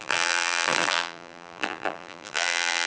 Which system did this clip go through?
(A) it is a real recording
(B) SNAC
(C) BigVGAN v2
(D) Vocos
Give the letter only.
C